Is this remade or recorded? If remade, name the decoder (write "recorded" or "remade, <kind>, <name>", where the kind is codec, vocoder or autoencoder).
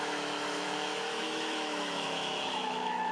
remade, autoencoder, DAC-VAE